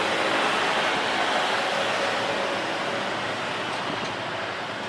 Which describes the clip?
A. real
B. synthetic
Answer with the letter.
A